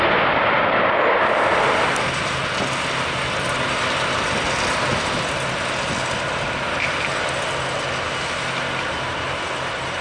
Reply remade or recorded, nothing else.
recorded